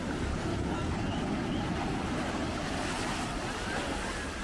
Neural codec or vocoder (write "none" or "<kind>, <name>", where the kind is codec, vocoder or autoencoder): none